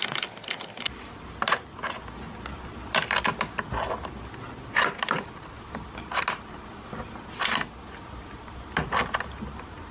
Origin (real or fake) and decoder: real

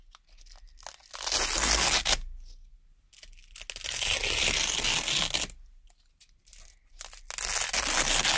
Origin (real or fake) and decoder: real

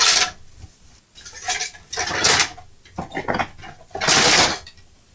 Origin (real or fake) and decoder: real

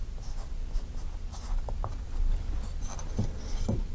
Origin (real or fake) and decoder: real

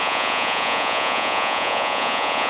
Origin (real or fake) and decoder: fake, vocoder, Vocos